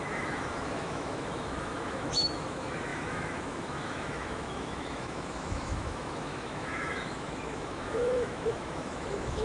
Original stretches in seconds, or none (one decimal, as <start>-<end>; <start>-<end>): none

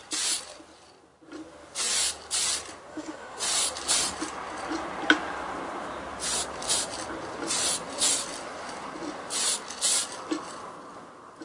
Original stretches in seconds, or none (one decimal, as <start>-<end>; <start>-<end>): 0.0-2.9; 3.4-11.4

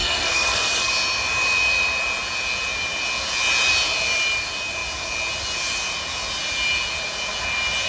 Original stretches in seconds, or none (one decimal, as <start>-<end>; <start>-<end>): 0.9-7.9

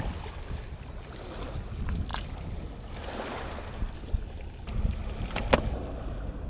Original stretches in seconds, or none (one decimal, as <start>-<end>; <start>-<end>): 0.0-6.5

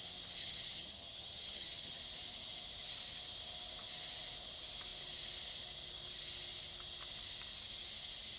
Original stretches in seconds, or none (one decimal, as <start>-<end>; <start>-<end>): 0.0-0.4; 2.0-8.4

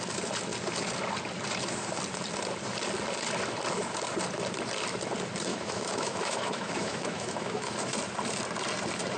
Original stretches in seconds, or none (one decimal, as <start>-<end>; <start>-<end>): 0.0-5.5; 7.7-9.2

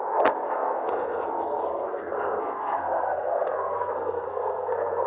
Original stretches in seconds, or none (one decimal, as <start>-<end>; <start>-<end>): none

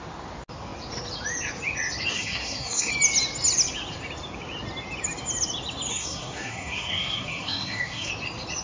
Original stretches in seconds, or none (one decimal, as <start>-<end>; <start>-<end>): 0.0-2.1; 2.9-5.9; 8.1-8.6